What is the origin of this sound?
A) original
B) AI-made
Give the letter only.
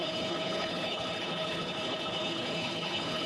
B